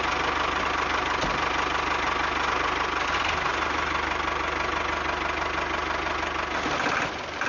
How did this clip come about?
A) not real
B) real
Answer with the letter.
B